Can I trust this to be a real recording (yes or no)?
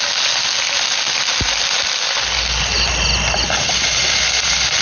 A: yes